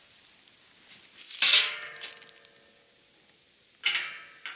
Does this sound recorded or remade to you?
recorded